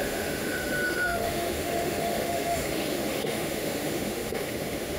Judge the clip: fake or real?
fake